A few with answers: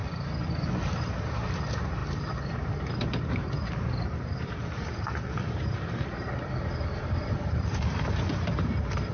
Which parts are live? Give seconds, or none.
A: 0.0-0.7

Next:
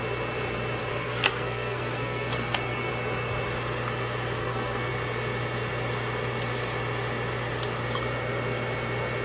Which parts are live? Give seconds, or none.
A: 0.0-0.9; 2.9-4.4; 4.9-9.2

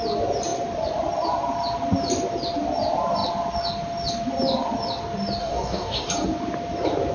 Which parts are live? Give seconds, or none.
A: 0.0-5.4; 6.1-7.1

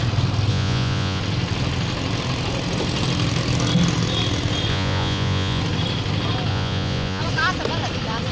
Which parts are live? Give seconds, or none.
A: 0.0-0.5; 1.2-4.7; 5.6-6.5; 7.2-8.3